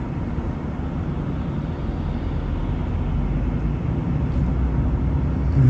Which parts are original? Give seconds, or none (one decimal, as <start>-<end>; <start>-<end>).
0.0-5.7